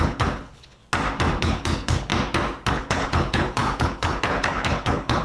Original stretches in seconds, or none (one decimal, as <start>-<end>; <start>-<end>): 0.8-1.4; 2.1-2.7